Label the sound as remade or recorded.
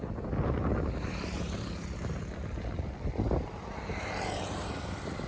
recorded